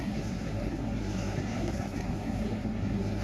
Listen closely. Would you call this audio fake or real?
fake